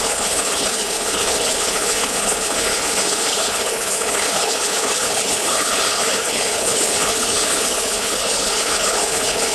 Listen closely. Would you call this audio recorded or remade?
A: remade